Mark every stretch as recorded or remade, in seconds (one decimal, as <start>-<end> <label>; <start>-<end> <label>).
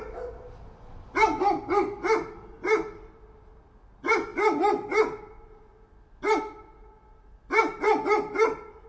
0.0-8.9 recorded